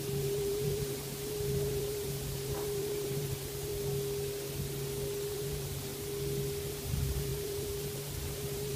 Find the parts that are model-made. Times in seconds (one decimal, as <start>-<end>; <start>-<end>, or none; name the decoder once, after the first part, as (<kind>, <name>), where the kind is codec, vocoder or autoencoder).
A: 0.0-3.7 (vocoder, BigVGAN v2); 5.3-5.9; 6.7-8.8